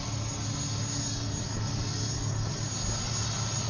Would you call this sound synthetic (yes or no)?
no